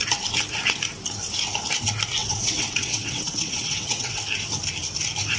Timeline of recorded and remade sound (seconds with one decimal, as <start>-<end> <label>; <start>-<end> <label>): 0.0-2.2 recorded; 2.2-4.2 remade; 4.2-5.4 recorded